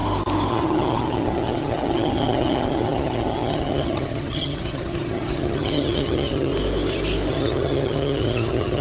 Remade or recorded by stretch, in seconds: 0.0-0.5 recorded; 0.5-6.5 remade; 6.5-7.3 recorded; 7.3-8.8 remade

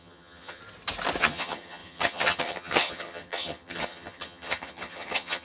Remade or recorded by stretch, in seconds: 0.0-0.6 remade; 0.6-1.2 recorded; 1.2-5.4 remade

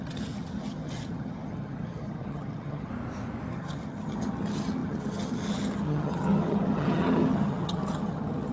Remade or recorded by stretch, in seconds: 0.0-2.9 remade; 2.9-3.5 recorded; 3.5-8.5 remade

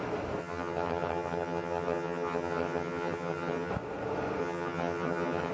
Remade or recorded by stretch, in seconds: 0.0-0.4 recorded; 0.4-3.7 remade; 3.7-4.4 recorded; 4.4-5.5 remade

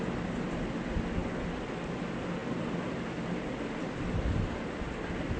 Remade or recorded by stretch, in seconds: 0.0-5.4 recorded

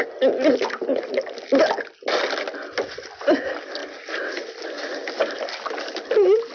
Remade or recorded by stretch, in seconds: 0.0-6.5 recorded

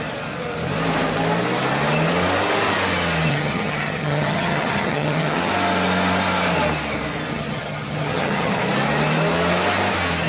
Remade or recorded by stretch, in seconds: 0.0-3.3 recorded; 3.3-5.5 remade; 5.5-7.3 recorded; 7.3-8.6 remade; 8.6-10.3 recorded

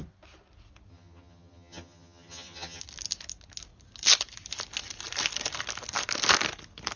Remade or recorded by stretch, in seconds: 0.0-0.9 recorded; 0.9-2.8 remade; 2.8-7.0 recorded